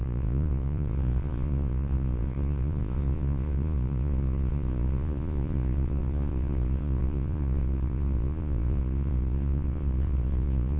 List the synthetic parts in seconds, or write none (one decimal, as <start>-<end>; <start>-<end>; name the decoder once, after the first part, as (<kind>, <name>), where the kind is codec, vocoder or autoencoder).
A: 0.0-10.8 (vocoder, Vocos)